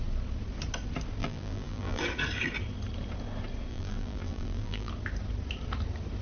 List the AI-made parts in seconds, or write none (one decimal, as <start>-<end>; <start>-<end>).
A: 1.2-2.0; 3.7-4.9